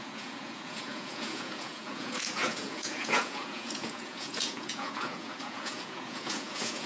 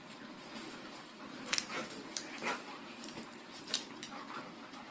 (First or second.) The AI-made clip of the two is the first